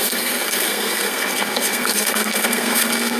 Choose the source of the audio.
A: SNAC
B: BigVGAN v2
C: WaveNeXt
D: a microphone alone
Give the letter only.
A